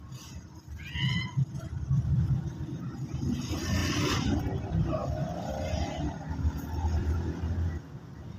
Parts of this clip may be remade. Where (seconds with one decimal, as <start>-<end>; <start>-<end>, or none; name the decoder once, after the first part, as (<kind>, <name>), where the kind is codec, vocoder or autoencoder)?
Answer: 5.0-5.5 (vocoder, BigVGAN v2)